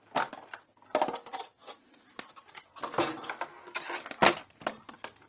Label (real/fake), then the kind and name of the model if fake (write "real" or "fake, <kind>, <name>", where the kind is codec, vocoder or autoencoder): real